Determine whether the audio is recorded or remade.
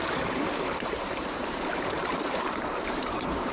remade